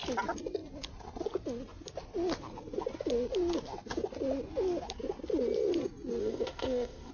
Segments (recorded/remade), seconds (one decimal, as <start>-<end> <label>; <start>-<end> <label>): 0.0-6.2 recorded; 6.2-7.1 remade